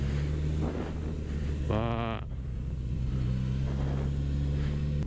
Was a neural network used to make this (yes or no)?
no